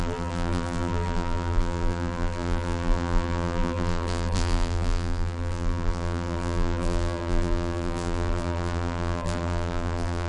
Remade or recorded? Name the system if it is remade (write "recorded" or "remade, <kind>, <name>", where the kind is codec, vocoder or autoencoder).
remade, vocoder, BigVGAN v2